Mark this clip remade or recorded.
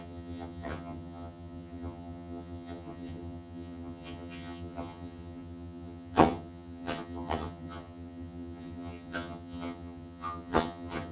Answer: remade